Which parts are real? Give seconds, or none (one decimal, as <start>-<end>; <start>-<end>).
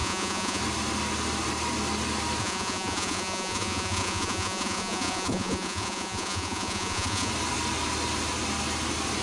0.6-2.4; 7.3-9.2